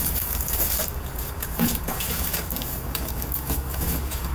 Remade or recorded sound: remade